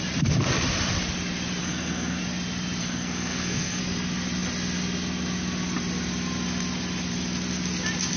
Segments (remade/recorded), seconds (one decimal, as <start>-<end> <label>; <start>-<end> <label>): 0.0-1.6 recorded; 1.6-2.2 remade; 2.2-2.8 recorded; 2.8-3.8 remade; 3.8-8.2 recorded